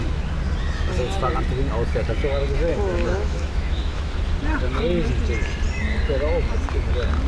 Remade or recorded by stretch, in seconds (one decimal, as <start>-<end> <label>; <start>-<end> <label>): 0.0-2.7 recorded; 2.7-4.2 remade; 4.2-7.3 recorded